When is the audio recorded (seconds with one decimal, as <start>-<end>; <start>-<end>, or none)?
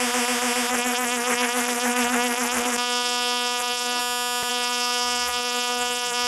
0.0-0.7; 4.0-4.5